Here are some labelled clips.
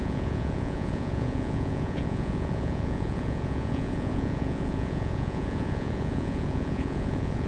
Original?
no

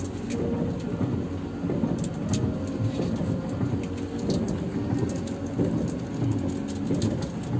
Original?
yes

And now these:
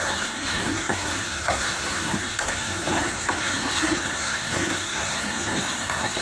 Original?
no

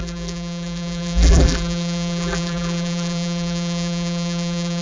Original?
no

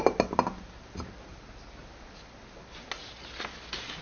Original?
yes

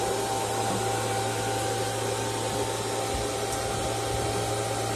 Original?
yes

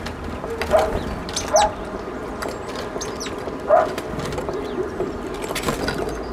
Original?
yes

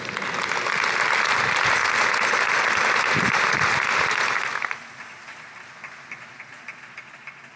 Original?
yes